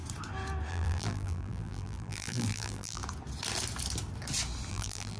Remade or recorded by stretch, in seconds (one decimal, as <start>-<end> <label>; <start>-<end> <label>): 0.0-0.7 recorded; 0.7-3.0 remade; 3.0-4.7 recorded; 4.7-5.2 remade